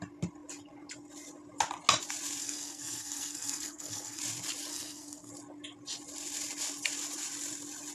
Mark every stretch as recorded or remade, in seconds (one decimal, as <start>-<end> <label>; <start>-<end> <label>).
0.0-2.4 recorded; 2.4-4.2 remade; 4.2-4.7 recorded; 4.7-5.3 remade; 5.3-7.9 recorded